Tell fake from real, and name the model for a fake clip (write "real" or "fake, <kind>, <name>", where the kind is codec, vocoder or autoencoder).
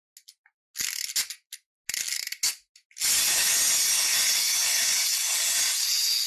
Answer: real